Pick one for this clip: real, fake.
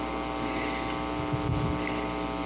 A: real